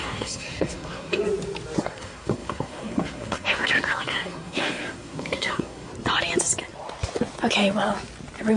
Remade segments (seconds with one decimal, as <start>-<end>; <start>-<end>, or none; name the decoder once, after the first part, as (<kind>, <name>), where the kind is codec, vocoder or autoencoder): 0.0-1.2 (codec, SNAC); 1.8-5.9